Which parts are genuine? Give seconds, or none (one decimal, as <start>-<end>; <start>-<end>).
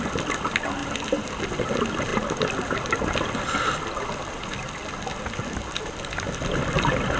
0.0-7.2